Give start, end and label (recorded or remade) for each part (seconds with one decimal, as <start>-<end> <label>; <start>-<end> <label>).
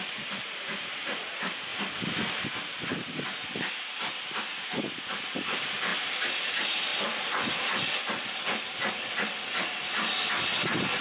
0.0-11.0 recorded